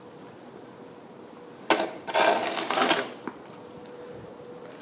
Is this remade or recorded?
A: recorded